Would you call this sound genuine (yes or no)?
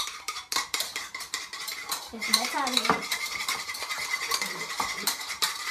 no